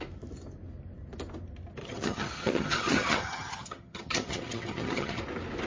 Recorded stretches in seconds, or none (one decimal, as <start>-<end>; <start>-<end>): 0.0-1.8; 5.2-5.7